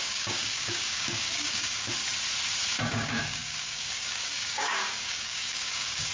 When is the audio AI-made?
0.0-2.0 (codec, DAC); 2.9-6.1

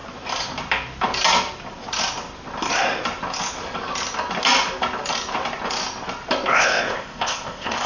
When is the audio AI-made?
6.5-7.9 (codec, ZipCodec)